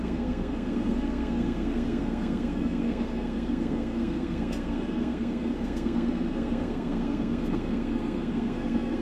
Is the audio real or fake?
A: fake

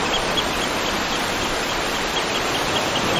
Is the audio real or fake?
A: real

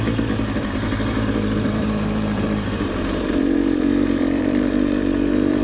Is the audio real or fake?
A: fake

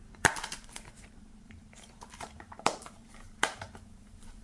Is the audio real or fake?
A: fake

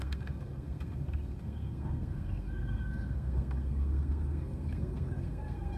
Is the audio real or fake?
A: fake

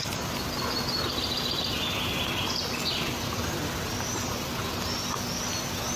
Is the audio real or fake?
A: real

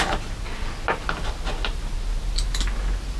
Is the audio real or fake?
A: real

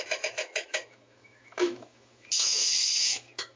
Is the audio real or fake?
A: fake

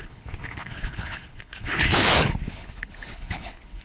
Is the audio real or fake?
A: fake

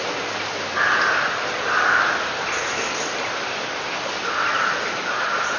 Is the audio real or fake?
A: real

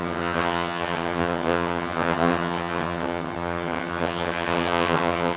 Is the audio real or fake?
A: fake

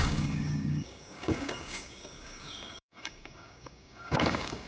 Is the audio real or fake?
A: fake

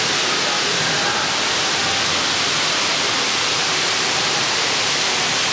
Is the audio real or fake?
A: real